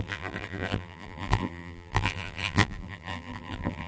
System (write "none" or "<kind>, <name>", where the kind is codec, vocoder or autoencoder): vocoder, BigVGAN v2